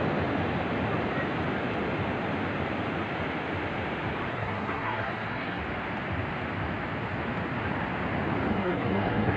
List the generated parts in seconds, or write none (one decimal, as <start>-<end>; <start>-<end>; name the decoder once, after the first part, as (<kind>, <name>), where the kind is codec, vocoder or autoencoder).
4.3-5.6 (codec, SNAC); 8.5-9.4